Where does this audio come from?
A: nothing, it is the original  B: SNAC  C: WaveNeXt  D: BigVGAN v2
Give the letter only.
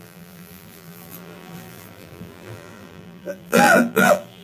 D